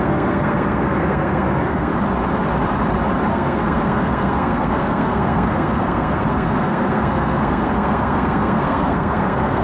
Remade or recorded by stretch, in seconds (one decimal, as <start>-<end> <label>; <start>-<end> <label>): 0.0-1.9 remade; 1.9-3.3 recorded; 3.3-9.6 remade